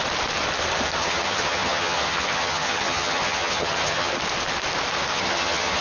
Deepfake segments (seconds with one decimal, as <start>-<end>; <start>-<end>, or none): 1.0-4.1; 5.1-5.8